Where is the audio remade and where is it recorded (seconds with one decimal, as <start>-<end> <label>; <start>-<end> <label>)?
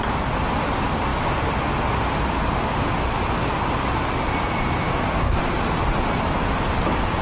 0.0-7.2 recorded